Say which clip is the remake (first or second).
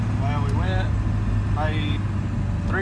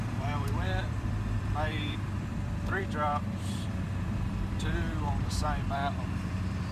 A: second